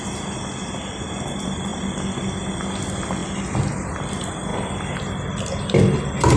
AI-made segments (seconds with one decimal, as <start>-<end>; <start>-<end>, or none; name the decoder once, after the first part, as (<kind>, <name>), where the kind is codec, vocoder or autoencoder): none